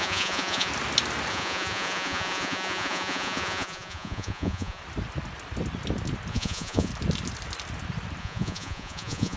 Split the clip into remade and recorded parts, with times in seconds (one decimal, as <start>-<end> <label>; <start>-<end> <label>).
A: 0.0-0.7 remade; 0.7-1.3 recorded; 1.3-4.8 remade; 4.8-6.3 recorded; 6.3-6.9 remade; 6.9-8.2 recorded; 8.2-9.4 remade